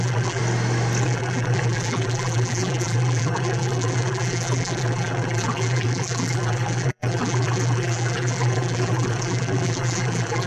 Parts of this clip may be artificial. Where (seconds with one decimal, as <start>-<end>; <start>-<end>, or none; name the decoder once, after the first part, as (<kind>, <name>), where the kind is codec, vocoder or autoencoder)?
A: 0.0-0.4 (vocoder, BigVGAN v2); 1.0-10.5